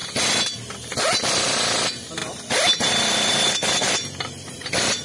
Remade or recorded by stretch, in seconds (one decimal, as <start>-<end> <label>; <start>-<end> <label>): 0.0-0.7 remade; 0.7-3.3 recorded; 3.3-5.0 remade